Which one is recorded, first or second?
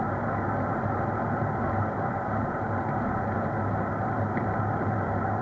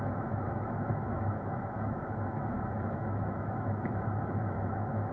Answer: first